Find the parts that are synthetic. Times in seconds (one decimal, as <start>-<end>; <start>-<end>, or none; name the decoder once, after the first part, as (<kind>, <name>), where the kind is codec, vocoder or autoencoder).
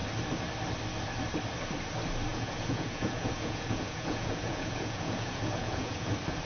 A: 2.3-6.1 (vocoder, Vocos)